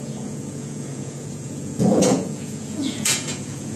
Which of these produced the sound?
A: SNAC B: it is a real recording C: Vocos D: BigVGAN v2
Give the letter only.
C